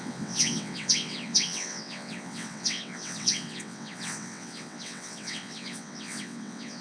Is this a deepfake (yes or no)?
yes